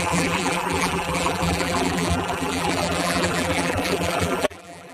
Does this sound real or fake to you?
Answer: fake